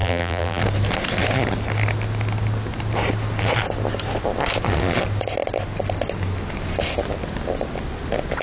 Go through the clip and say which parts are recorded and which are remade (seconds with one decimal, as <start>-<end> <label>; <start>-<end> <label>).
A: 0.0-0.6 remade; 0.6-8.4 recorded